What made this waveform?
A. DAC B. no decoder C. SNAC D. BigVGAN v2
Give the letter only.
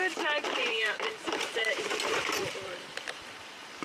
D